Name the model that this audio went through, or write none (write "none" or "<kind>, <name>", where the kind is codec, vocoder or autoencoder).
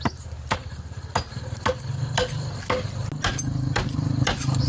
none